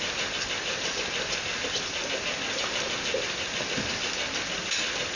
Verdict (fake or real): real